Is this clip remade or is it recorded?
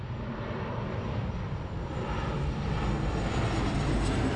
recorded